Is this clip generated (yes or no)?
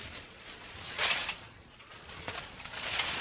yes